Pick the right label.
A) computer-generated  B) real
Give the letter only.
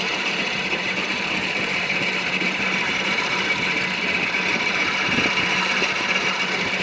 A